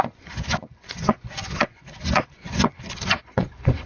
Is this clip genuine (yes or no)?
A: no